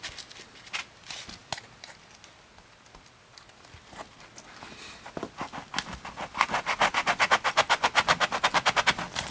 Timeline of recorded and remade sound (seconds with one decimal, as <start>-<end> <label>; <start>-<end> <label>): 0.0-9.3 recorded